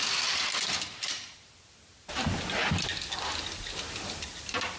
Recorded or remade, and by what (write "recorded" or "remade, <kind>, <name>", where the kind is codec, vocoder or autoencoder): recorded